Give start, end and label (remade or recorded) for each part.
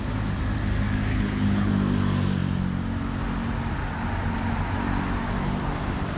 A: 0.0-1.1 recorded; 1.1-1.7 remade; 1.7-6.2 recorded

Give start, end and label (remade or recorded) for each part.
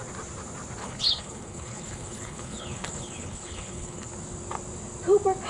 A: 0.0-0.8 recorded; 0.8-4.1 remade; 4.1-5.5 recorded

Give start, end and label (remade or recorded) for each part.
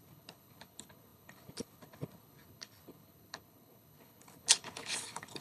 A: 0.0-5.4 remade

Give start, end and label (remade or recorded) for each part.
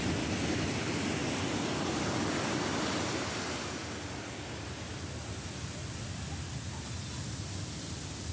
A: 0.0-8.3 recorded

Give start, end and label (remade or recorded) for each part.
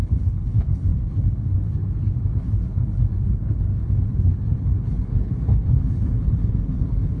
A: 0.0-7.2 remade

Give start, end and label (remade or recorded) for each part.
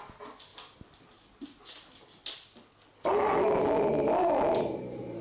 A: 0.0-5.2 recorded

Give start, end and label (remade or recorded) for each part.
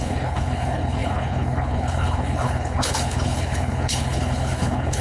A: 0.0-5.0 remade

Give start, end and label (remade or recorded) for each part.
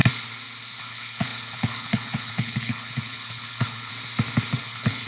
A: 0.0-0.8 recorded; 0.8-3.9 remade; 3.9-4.6 recorded; 4.6-5.1 remade